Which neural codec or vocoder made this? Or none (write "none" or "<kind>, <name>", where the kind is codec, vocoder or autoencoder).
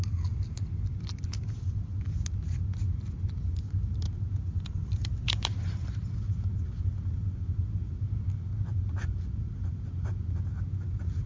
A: none